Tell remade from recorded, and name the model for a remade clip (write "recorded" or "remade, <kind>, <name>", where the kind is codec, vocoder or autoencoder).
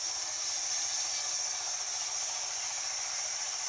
recorded